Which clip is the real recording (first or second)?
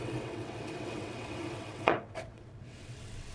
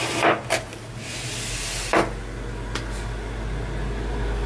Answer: second